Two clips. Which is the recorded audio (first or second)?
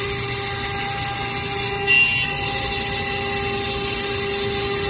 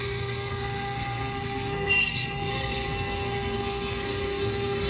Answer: first